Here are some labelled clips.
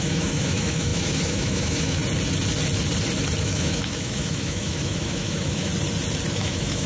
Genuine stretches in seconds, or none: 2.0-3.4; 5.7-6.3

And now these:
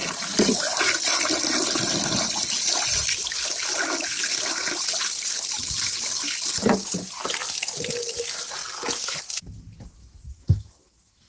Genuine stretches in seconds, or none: 0.0-10.0

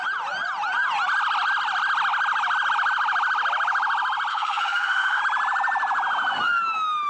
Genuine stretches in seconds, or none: 0.0-4.3; 5.2-7.1